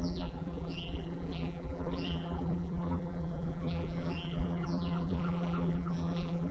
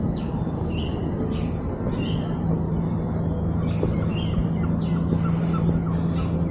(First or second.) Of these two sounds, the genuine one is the second